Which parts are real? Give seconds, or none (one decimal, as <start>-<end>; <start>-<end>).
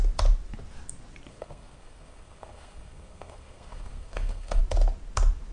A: 0.0-1.3; 4.6-5.5